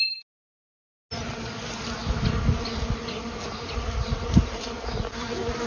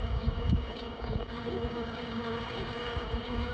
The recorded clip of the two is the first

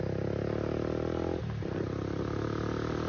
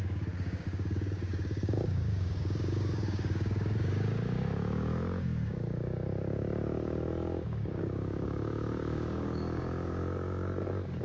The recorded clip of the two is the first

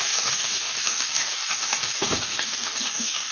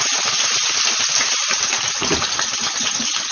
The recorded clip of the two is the second